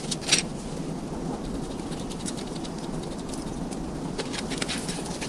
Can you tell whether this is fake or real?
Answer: real